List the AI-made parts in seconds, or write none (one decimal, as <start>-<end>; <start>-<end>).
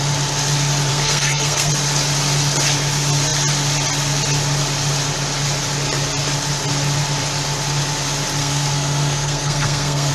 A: 0.9-1.7; 8.4-10.1